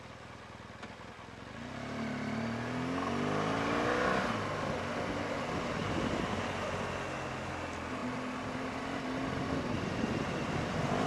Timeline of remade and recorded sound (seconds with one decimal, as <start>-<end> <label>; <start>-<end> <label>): 0.0-11.1 recorded